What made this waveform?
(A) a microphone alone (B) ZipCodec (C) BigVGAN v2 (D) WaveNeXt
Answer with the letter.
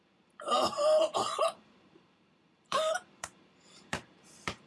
C